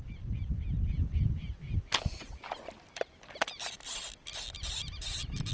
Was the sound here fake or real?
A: real